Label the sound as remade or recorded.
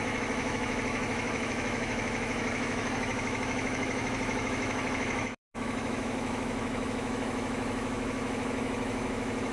remade